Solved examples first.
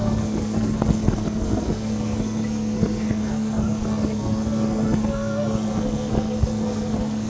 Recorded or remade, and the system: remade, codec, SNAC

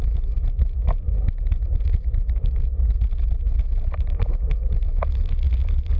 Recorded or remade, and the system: recorded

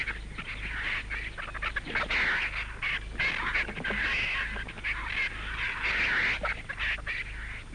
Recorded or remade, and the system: recorded